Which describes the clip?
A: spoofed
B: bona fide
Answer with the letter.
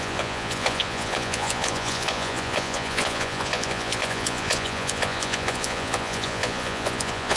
A